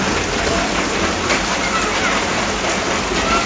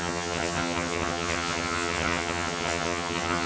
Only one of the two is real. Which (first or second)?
first